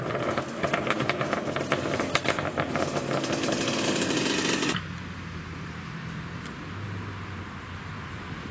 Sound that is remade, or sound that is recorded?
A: recorded